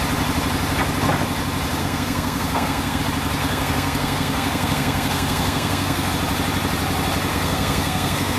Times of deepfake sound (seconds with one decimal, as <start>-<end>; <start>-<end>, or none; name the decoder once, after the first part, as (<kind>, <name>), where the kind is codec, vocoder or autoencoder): 1.8-3.0 (codec, SNAC); 3.4-6.1; 7.3-8.4

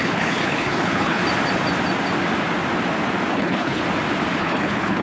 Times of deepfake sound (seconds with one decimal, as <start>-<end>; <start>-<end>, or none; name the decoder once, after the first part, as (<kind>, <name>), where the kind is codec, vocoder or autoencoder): 0.0-1.2 (codec, HILCodec); 3.3-3.8; 4.4-5.0

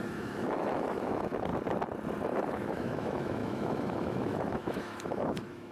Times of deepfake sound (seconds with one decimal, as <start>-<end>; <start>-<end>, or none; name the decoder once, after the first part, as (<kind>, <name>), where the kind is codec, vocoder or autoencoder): 0.0-1.5 (autoencoder, DAC-VAE); 2.5-5.7

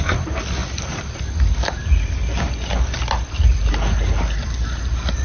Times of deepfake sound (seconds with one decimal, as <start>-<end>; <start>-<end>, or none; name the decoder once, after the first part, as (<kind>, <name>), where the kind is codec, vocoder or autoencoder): none

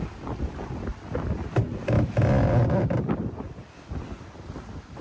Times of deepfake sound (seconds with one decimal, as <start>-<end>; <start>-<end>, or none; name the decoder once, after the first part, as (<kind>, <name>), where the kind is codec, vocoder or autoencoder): none

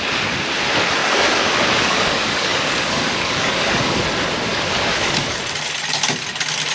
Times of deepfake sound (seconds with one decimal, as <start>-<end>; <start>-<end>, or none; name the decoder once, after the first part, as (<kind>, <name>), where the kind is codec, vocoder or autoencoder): 1.0-4.0 (codec, DAC); 4.5-5.4

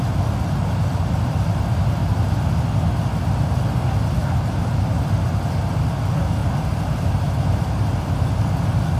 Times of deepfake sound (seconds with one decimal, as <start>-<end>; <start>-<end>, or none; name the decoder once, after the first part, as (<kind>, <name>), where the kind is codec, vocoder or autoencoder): 4.2-4.9 (vocoder, BigVGAN v2); 6.4-8.3